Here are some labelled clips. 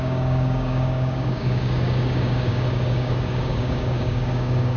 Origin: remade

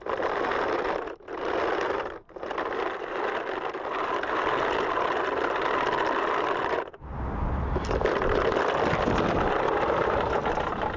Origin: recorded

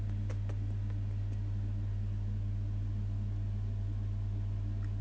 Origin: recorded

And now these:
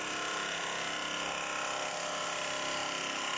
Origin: recorded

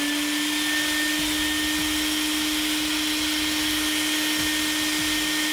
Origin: recorded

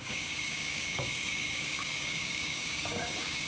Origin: remade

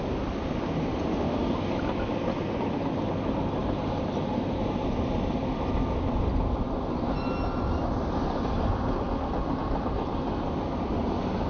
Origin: recorded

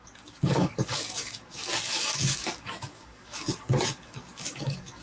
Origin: remade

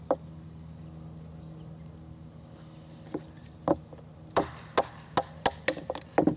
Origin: recorded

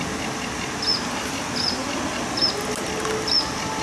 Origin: recorded